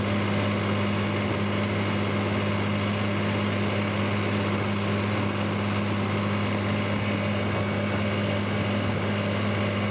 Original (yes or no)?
yes